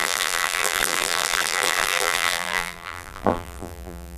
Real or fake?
fake